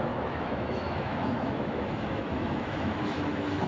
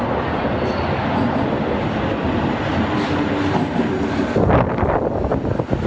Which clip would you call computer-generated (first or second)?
first